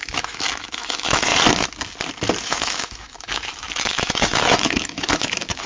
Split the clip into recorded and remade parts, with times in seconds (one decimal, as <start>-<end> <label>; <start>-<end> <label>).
0.0-1.3 remade; 1.3-2.4 recorded; 2.4-5.7 remade